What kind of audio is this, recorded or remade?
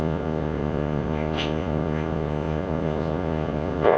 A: remade